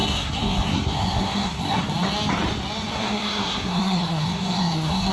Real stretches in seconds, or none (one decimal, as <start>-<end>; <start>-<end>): 1.8-2.9